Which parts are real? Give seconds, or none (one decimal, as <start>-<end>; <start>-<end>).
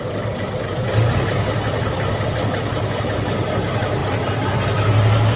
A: 0.0-5.4